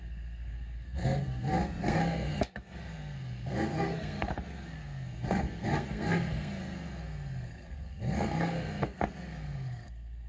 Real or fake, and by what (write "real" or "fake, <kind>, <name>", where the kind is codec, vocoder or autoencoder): fake, codec, SNAC